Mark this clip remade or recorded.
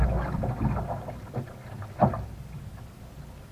recorded